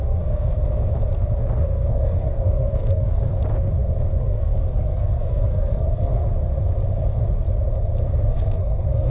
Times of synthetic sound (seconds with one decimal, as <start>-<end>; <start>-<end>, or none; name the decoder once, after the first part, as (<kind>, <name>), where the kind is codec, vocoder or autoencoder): 0.0-0.9 (codec, SNAC); 1.6-3.3; 4.2-6.2; 8.0-9.1